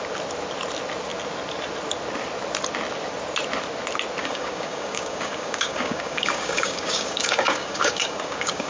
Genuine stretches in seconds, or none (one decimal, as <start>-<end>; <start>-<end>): 0.0-4.2